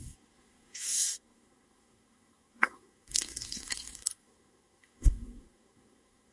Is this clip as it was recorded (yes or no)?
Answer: no